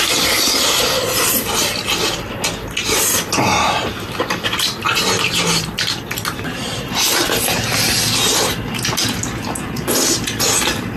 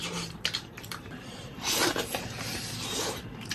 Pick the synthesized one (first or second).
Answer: second